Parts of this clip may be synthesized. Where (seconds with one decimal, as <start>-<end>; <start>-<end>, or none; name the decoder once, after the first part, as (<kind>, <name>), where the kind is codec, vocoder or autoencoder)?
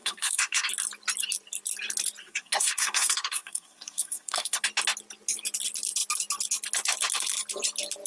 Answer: 0.0-0.7 (codec, SNAC); 2.2-4.6